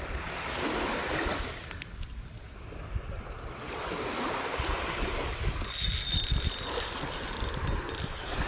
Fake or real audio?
real